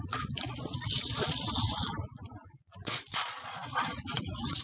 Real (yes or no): no